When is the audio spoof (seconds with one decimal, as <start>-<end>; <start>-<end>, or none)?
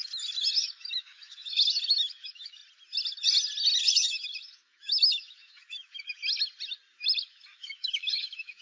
0.0-2.6; 3.8-6.2; 7.2-8.6